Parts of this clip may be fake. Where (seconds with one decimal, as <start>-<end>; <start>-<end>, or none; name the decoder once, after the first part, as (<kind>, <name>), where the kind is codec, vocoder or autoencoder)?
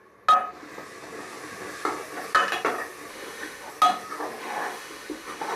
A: 3.1-3.7 (autoencoder, DAC-VAE); 4.4-5.6